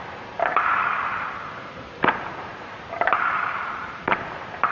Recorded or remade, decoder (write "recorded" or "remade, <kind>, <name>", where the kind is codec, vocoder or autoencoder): remade, vocoder, BigVGAN v2